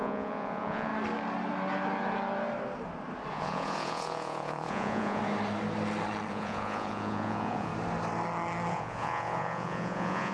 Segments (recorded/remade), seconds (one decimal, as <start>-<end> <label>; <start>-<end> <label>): 0.0-0.9 remade; 0.9-3.3 recorded; 3.3-5.2 remade; 5.2-6.3 recorded; 6.3-7.7 remade; 7.7-8.7 recorded; 8.7-10.3 remade